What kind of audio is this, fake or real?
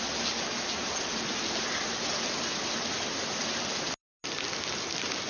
real